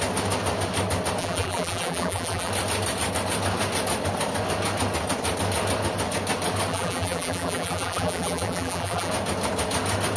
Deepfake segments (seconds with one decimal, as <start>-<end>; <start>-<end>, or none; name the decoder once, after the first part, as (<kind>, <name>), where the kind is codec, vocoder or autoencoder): 1.2-2.5 (vocoder, BigVGAN v2); 6.7-9.1